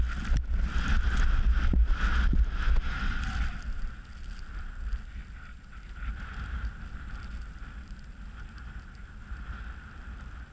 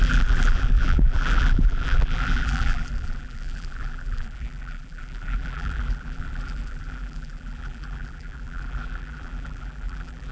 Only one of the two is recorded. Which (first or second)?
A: first